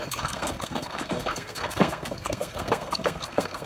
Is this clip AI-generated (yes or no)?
yes